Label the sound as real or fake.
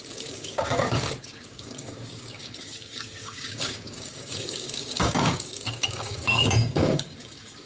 fake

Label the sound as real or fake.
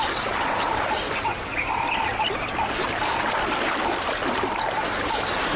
real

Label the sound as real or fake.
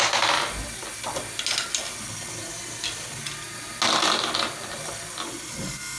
real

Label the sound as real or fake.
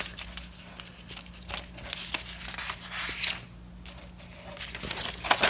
real